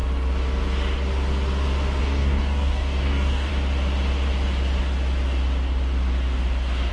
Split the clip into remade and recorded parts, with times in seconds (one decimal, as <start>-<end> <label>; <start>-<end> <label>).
0.0-2.0 recorded; 2.0-3.5 remade; 3.5-6.9 recorded